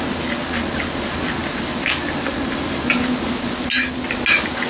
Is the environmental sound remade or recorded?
recorded